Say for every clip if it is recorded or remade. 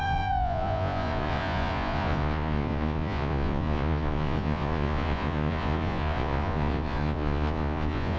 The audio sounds remade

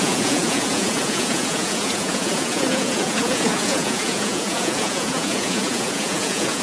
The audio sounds remade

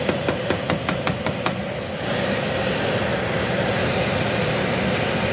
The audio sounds recorded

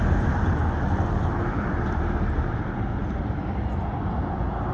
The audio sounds recorded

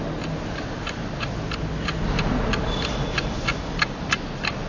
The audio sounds recorded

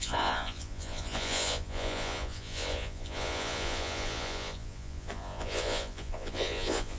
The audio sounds remade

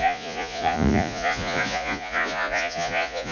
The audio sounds remade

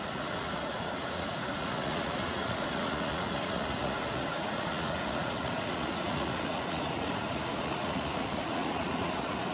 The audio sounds remade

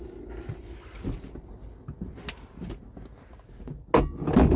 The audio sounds recorded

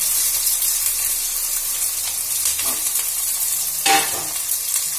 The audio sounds recorded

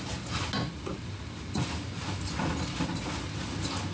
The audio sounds recorded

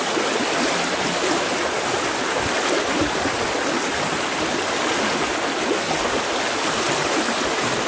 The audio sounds recorded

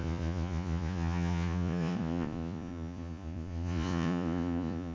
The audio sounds remade